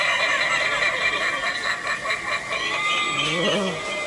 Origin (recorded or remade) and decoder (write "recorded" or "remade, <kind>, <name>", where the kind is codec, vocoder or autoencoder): recorded